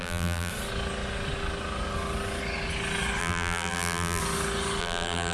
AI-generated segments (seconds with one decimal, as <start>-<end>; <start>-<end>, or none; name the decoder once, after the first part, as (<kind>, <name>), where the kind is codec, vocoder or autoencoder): 0.0-0.5 (vocoder, BigVGAN v2); 3.2-4.2; 4.8-5.3